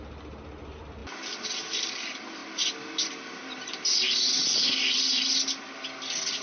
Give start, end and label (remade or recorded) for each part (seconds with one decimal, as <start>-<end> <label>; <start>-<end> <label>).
0.0-6.4 recorded